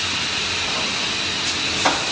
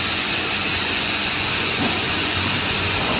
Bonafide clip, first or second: first